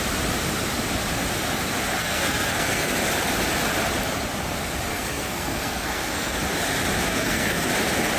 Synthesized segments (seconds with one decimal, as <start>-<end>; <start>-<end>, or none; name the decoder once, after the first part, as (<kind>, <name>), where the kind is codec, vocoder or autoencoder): 2.0-2.9 (codec, SNAC); 4.9-6.4; 7.1-7.7